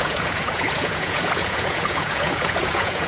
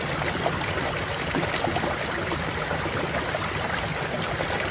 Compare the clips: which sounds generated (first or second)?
first